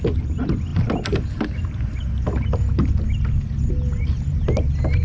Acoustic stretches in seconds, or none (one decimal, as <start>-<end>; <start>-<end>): 0.0-5.0